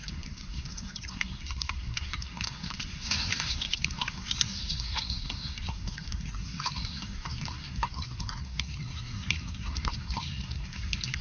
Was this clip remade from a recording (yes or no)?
yes